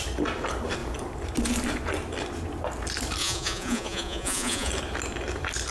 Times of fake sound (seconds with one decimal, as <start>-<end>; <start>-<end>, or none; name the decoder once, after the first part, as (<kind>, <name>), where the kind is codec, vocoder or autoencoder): 3.2-4.7 (vocoder, Vocos)